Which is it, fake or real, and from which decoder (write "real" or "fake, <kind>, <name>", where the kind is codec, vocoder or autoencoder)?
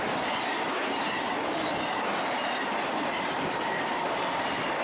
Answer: real